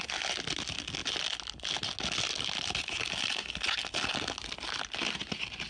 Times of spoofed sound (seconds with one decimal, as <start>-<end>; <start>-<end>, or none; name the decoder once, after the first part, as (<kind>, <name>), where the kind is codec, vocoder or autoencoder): none